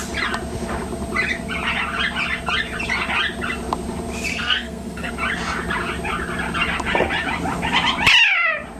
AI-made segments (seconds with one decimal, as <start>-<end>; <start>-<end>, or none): 4.3-5.1